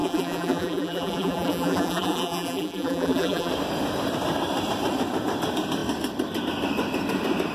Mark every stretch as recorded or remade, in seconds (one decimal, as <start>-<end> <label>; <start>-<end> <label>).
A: 0.0-3.5 remade; 3.5-7.5 recorded